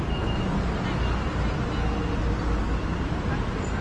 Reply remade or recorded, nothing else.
recorded